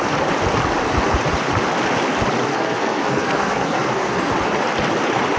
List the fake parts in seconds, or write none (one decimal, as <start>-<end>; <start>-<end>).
2.5-4.3